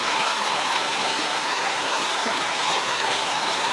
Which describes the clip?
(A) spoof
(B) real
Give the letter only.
A